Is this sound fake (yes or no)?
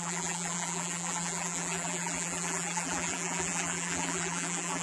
yes